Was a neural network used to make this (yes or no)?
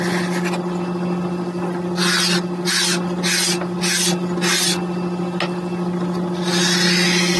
no